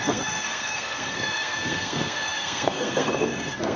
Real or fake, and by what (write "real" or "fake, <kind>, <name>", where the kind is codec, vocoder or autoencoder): fake, codec, SNAC